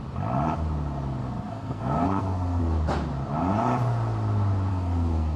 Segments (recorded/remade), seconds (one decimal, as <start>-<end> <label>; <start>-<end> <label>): 0.0-1.2 recorded; 1.2-2.6 remade; 2.6-4.7 recorded; 4.7-5.4 remade